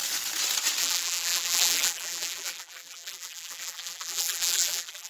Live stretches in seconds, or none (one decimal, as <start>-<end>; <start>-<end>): 0.0-0.8